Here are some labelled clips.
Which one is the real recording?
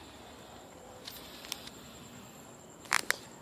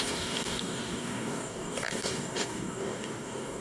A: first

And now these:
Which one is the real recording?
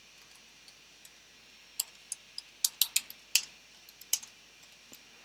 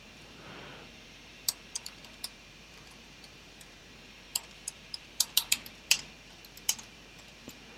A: first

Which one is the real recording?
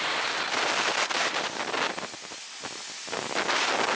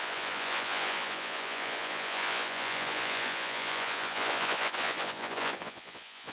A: first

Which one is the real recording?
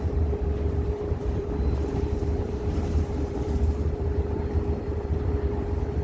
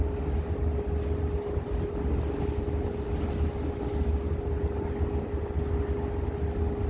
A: second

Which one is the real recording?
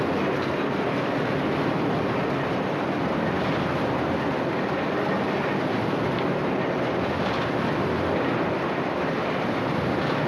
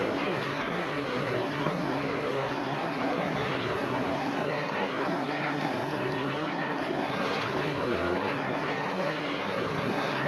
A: first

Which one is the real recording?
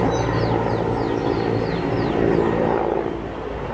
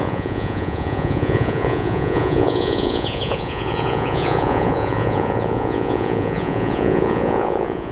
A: first